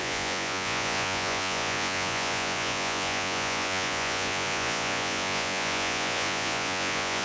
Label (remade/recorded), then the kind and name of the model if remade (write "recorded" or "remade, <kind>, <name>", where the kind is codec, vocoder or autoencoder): remade, vocoder, Vocos